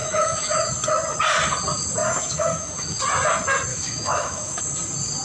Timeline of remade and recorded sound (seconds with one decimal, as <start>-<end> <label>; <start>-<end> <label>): 0.0-0.7 remade; 0.7-2.0 recorded; 2.0-3.0 remade; 3.0-3.7 recorded; 3.7-4.6 remade; 4.6-5.2 recorded